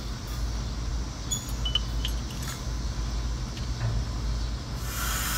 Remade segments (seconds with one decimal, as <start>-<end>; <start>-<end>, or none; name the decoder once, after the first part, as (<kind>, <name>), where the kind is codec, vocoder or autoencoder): none